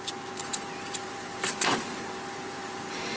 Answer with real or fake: real